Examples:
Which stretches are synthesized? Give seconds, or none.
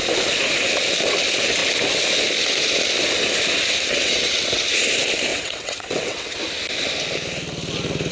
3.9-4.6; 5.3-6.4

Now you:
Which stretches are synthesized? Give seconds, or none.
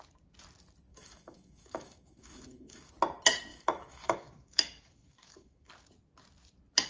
0.9-2.9; 3.5-5.7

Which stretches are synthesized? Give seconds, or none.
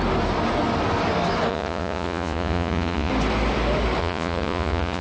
1.5-3.1; 4.0-5.0